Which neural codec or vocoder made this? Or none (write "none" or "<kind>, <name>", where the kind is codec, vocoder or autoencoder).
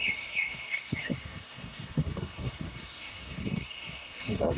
codec, SNAC